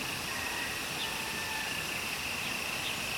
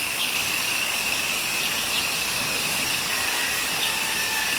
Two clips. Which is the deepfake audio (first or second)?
second